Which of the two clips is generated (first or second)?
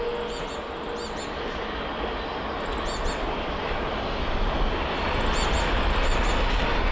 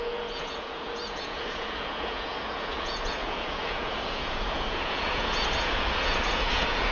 second